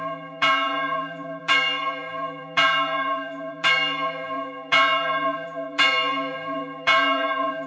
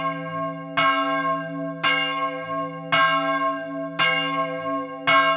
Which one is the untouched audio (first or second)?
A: second